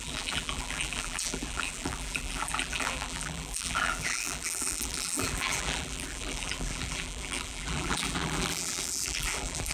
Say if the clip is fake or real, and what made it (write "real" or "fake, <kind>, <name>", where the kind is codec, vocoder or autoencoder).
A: fake, vocoder, BigVGAN v2